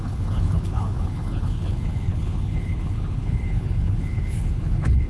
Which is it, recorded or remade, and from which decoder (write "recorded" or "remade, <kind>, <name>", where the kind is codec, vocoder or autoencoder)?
remade, codec, HILCodec